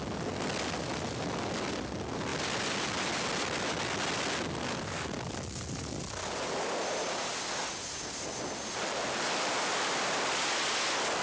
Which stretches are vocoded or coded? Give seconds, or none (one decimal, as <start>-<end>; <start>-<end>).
none